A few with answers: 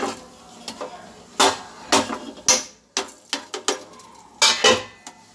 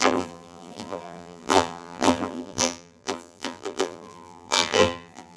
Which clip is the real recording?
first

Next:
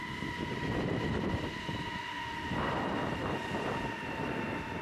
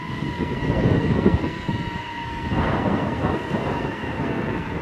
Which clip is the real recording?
first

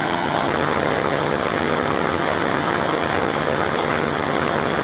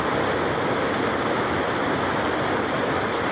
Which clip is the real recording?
second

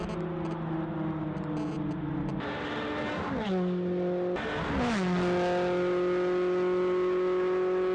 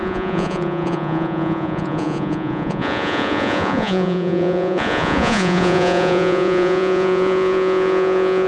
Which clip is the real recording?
first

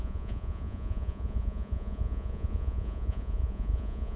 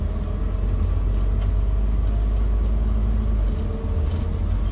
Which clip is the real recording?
second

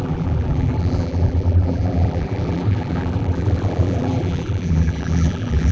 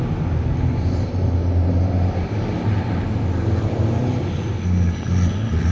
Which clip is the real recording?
second